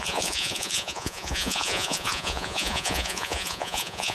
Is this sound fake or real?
fake